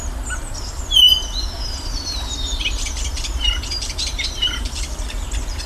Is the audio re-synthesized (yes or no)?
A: yes